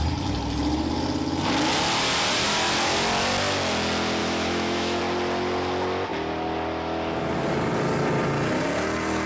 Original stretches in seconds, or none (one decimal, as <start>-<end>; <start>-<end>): 0.0-4.2; 5.0-9.3